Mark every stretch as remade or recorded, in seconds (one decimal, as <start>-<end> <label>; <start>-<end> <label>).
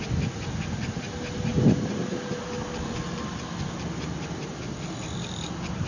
0.0-5.9 recorded